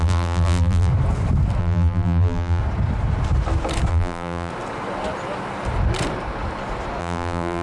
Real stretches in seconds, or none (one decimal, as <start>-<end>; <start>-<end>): 0.9-1.6; 2.6-3.9; 4.5-7.0